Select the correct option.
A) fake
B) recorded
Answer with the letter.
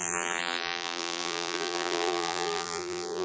A